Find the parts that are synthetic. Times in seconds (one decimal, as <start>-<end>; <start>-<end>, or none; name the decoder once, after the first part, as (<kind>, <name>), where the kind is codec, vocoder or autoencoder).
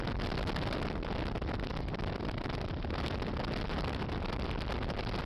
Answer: none